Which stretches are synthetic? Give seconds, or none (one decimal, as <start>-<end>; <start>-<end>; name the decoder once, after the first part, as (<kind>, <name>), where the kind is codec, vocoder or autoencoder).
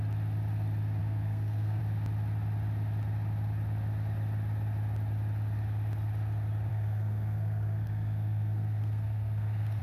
1.0-1.8 (codec, SNAC); 6.7-9.8